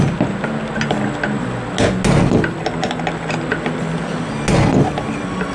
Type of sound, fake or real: real